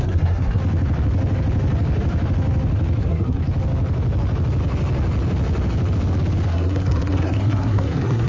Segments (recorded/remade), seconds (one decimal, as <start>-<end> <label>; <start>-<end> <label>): 0.0-0.6 remade; 0.6-3.0 recorded; 3.0-3.4 remade; 3.4-6.5 recorded; 6.5-8.3 remade